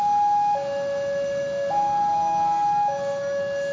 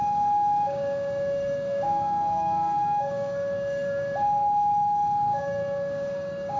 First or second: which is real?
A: first